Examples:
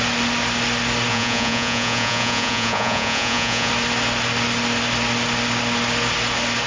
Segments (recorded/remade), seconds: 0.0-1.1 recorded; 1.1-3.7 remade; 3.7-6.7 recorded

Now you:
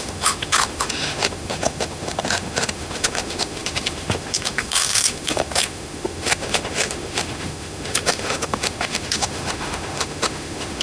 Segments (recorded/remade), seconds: 0.0-10.8 remade

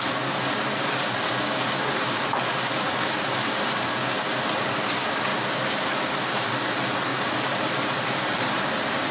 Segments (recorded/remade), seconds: 0.0-5.3 recorded; 5.3-5.8 remade; 5.8-7.1 recorded; 7.1-8.7 remade; 8.7-9.1 recorded

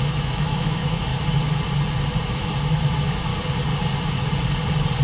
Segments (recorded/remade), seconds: 0.0-1.1 remade; 1.1-2.3 recorded; 2.3-3.3 remade; 3.3-5.0 recorded